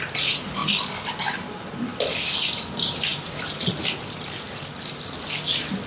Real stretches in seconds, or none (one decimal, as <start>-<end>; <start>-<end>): 0.0-5.9